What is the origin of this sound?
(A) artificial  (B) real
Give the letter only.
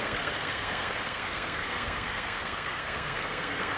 A